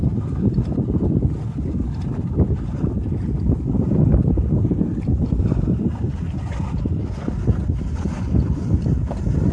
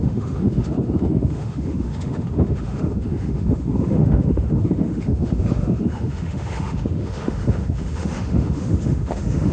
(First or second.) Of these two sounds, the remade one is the second